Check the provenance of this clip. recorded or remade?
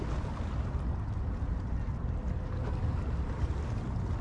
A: recorded